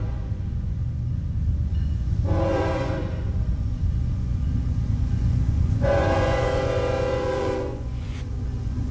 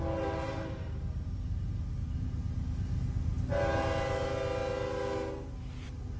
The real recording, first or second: second